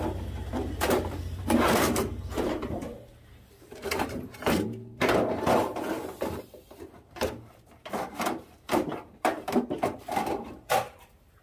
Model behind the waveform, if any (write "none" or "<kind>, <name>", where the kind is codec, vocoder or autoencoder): vocoder, BigVGAN v2